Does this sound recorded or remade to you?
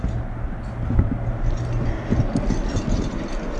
recorded